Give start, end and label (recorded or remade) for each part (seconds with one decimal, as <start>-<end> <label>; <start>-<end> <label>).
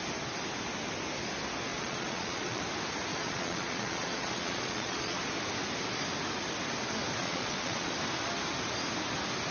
0.0-1.7 recorded; 1.7-2.6 remade; 2.6-3.1 recorded; 3.1-5.2 remade; 5.2-7.2 recorded; 7.2-7.9 remade; 7.9-9.5 recorded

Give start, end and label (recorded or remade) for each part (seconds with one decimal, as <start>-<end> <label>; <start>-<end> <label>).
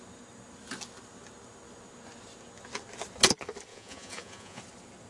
0.0-3.7 recorded; 3.7-4.6 remade; 4.6-5.1 recorded